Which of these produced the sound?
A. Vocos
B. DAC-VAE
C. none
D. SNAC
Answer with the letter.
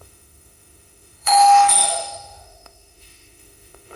B